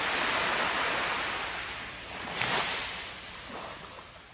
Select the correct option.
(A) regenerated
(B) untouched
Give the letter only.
B